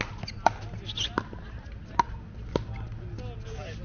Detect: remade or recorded recorded